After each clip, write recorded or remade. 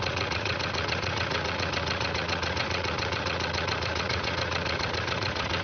remade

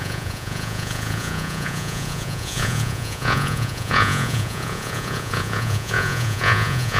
remade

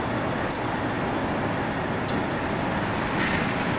recorded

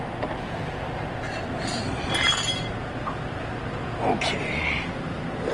recorded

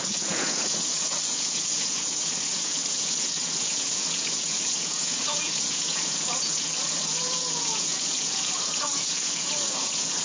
remade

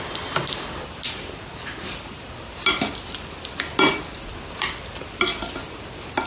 recorded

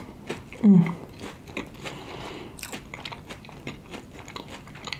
recorded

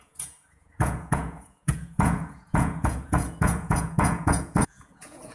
remade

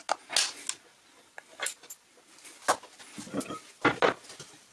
recorded